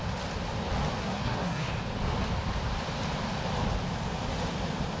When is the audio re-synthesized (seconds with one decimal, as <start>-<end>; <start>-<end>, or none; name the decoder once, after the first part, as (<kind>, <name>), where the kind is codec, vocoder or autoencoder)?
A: 1.0-1.7 (codec, SNAC)